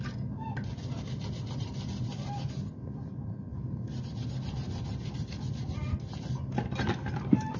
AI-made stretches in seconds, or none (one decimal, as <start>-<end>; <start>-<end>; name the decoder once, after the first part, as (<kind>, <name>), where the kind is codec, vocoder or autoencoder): none